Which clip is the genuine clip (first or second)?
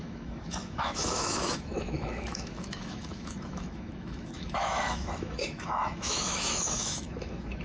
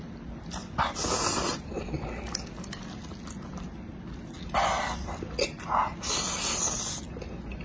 second